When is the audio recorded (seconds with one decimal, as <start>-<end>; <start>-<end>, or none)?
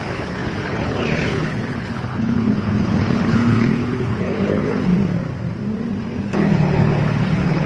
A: 4.9-6.2